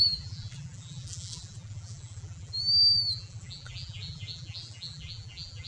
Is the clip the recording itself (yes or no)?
no